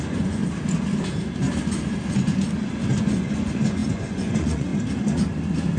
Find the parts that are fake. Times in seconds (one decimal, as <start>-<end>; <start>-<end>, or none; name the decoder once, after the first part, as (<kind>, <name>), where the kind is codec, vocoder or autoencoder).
0.0-0.4 (vocoder, Vocos); 3.0-4.7